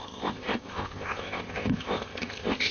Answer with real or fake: fake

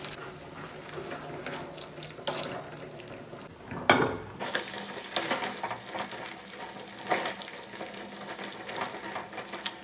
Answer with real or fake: real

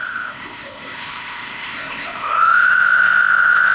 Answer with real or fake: fake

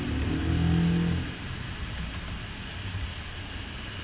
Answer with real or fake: real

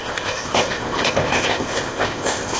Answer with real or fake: fake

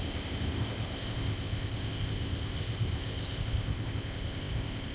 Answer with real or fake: fake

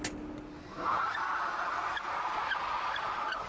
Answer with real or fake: real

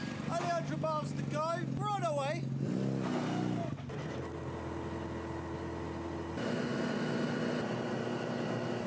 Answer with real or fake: real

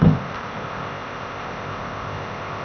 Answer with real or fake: fake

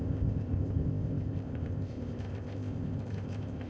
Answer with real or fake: fake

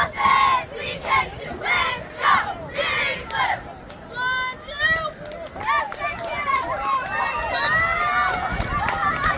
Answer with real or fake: real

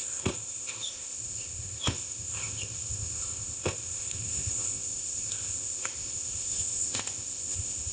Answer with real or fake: fake